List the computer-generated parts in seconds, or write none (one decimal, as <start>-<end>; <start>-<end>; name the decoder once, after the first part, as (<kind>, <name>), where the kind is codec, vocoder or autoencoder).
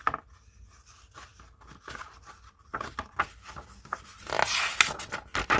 none